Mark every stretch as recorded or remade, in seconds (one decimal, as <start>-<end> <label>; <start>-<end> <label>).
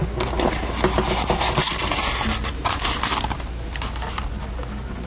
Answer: 0.0-5.1 recorded